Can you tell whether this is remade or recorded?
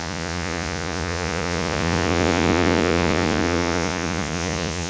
remade